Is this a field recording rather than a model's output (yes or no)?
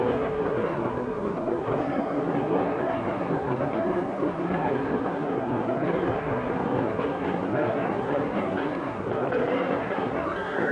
no